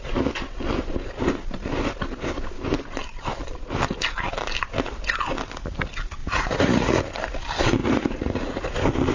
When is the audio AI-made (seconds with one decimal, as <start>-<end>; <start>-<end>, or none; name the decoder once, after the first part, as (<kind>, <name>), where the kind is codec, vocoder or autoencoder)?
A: 6.2-7.0 (vocoder, Vocos); 7.8-8.7